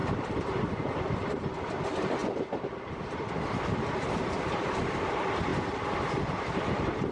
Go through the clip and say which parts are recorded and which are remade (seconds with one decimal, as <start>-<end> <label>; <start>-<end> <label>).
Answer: 0.0-1.4 remade; 1.4-2.2 recorded; 2.2-4.4 remade; 4.4-7.1 recorded